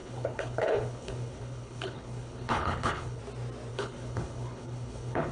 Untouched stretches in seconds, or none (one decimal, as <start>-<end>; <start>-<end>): 3.2-3.7